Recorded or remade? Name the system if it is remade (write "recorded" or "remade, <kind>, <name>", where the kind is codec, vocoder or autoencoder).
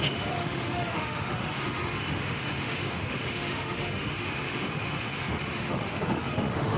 remade, autoencoder, DAC-VAE